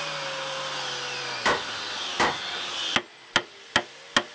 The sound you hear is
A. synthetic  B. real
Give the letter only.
B